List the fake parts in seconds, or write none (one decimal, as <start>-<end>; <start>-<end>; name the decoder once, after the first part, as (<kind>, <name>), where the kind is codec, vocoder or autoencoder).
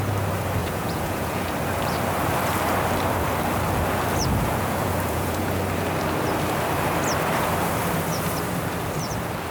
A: 0.6-1.5 (vocoder, Vocos); 4.3-5.6